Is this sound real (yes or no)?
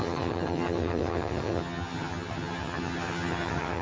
no